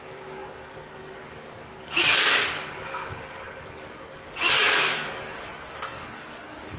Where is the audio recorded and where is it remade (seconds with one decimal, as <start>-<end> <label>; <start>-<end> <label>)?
0.0-6.8 remade